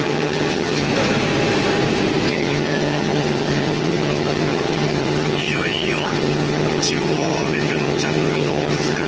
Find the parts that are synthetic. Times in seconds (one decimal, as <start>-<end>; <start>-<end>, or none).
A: 0.0-0.9; 2.3-9.1